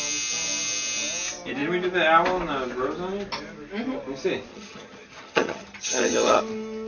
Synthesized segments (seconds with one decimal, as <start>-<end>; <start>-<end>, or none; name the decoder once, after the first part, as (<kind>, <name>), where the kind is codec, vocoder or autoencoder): 4.5-6.4 (vocoder, HiFi-GAN)